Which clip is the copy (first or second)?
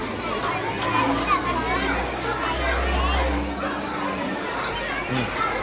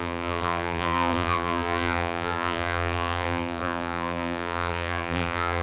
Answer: second